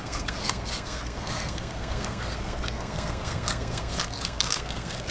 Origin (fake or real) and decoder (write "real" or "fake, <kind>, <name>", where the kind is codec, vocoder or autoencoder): fake, codec, SNAC